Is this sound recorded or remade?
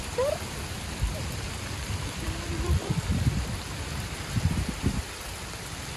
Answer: remade